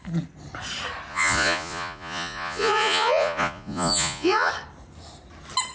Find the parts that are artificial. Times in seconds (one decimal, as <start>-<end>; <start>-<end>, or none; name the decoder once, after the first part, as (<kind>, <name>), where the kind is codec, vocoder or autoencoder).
1.1-4.5 (vocoder, Vocos)